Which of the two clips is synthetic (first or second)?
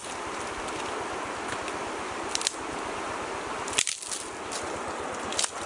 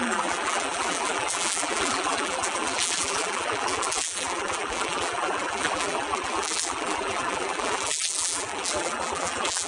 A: second